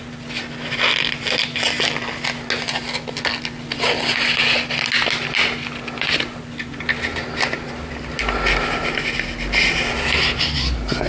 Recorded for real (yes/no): yes